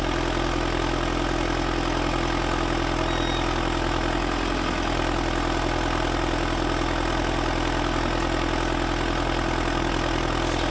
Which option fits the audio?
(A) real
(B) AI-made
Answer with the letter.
A